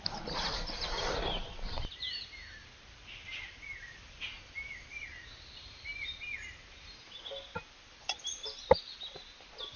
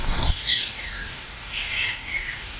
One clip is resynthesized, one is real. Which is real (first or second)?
first